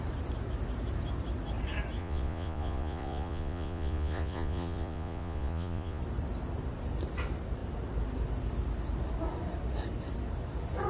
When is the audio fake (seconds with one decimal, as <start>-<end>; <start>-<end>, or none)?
2.0-6.0